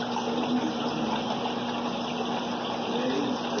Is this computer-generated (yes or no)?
no